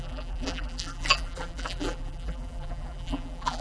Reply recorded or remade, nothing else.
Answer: remade